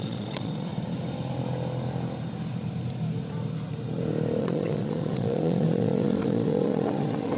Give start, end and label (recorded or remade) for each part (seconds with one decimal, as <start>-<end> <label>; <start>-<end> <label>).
0.0-0.7 remade; 0.7-4.4 recorded; 4.4-7.4 remade